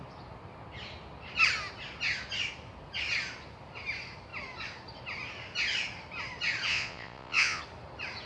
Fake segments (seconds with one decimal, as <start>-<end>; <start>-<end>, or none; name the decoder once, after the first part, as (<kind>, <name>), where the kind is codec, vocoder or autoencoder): 6.7-7.6 (vocoder, Vocos)